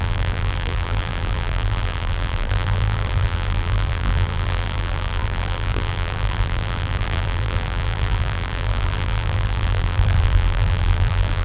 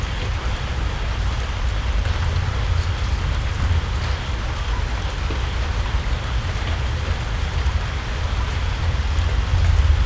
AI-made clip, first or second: first